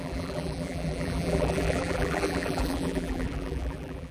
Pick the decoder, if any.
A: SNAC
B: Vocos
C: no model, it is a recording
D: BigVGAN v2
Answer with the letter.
D